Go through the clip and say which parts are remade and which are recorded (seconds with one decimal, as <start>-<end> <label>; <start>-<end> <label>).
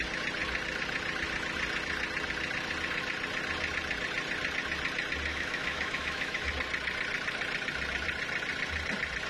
0.0-5.3 recorded; 5.3-6.5 remade; 6.5-9.3 recorded